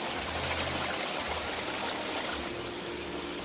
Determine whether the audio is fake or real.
real